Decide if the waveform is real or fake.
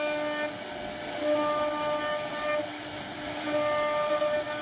real